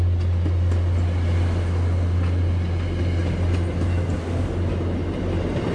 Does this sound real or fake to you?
real